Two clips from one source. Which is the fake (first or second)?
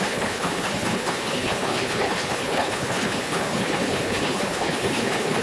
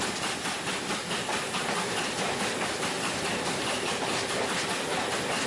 first